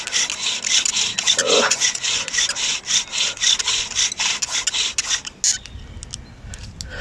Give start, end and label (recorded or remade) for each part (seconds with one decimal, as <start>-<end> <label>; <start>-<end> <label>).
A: 0.0-1.4 recorded; 1.4-2.3 remade; 2.3-7.0 recorded